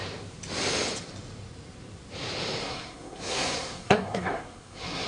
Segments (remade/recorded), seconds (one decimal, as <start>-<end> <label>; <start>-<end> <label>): 0.0-2.6 recorded; 2.6-5.1 remade